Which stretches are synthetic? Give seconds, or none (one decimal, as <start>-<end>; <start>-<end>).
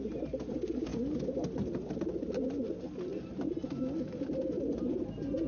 none